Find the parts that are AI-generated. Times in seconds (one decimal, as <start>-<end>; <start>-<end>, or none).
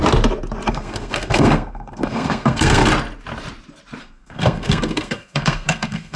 0.7-2.8; 4.0-6.2